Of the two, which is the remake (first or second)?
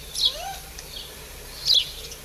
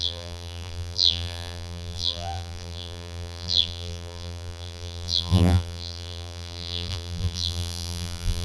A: second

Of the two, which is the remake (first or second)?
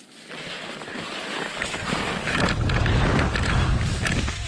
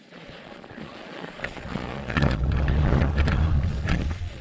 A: second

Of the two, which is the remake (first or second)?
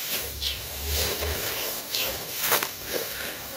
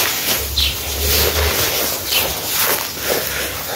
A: first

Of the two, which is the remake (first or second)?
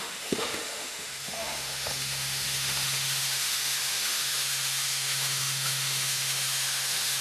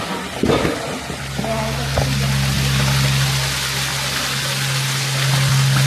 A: first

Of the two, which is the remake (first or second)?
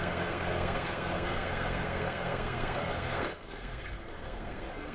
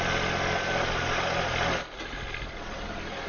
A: first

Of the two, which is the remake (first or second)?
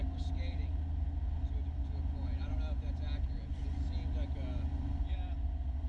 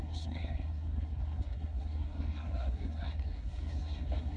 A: second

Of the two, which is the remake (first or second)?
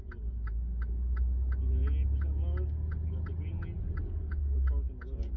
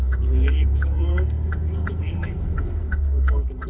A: second